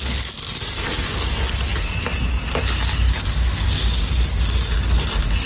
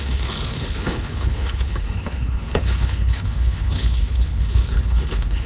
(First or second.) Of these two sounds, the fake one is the second